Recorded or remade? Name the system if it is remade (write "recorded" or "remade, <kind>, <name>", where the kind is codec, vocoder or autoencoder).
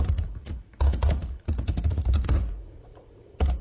remade, vocoder, Vocos